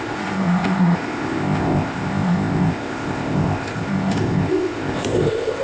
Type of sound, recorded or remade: remade